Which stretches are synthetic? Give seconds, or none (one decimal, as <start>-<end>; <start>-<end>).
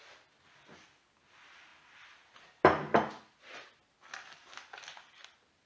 none